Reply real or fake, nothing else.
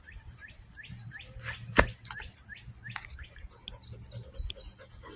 real